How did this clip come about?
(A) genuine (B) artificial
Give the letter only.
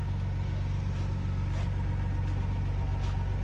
A